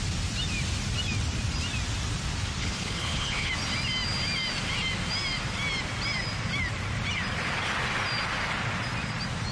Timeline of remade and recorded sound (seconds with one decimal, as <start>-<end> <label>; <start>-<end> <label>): 0.0-2.6 recorded; 2.6-3.5 remade; 3.5-9.5 recorded